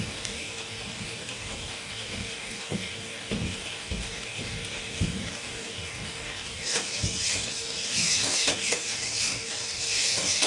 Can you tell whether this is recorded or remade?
remade